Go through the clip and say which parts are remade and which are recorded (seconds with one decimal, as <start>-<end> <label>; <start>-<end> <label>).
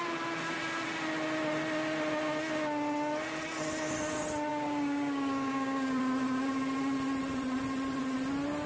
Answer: 0.0-4.5 recorded; 4.5-6.0 remade; 6.0-8.7 recorded